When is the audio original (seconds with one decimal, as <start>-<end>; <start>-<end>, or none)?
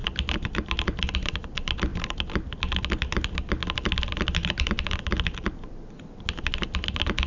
0.0-7.3